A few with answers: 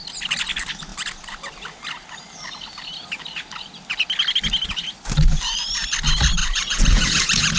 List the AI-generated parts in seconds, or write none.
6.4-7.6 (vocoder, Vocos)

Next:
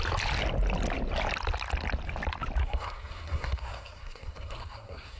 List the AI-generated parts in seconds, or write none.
2.6-5.2 (codec, SNAC)

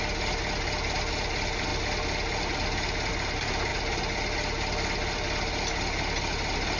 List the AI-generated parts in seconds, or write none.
none

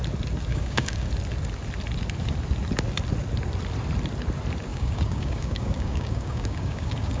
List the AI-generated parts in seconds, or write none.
0.5-1.1 (codec, DAC); 4.7-7.2